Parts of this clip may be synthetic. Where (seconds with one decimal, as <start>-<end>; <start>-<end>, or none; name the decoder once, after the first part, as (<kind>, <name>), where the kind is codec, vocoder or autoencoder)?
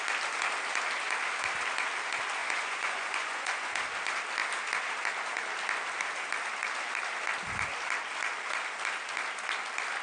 2.4-3.7 (vocoder, Vocos)